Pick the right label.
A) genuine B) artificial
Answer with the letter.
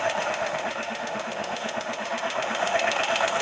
B